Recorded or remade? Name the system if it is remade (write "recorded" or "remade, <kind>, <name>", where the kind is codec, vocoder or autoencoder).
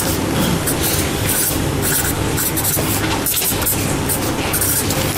recorded